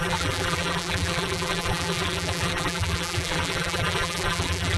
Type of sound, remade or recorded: remade